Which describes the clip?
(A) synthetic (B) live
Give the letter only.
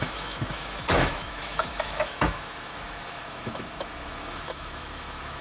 A